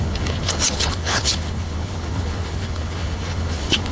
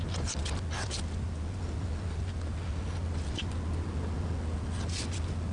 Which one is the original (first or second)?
second